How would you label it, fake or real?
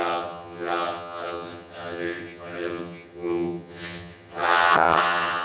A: fake